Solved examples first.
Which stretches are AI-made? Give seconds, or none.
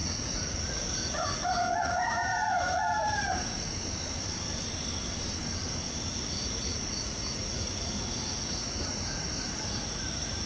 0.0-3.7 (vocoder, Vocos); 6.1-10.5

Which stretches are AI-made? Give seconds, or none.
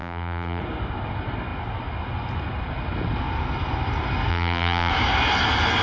0.0-0.6 (vocoder, BigVGAN v2); 4.3-4.9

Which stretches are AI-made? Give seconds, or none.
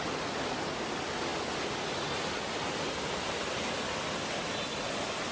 none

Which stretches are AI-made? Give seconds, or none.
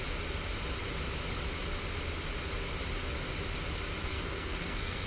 4.1-5.1 (codec, SNAC)